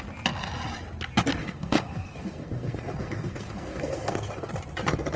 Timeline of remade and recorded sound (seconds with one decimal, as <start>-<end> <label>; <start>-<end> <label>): 0.0-1.4 recorded; 1.4-4.5 remade; 4.5-5.2 recorded